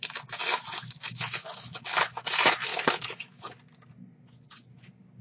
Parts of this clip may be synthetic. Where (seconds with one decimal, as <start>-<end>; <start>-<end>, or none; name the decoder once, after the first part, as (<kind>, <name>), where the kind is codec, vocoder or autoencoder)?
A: 0.4-2.3 (autoencoder, DAC-VAE); 2.7-3.5